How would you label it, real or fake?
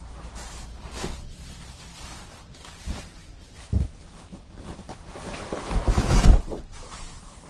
fake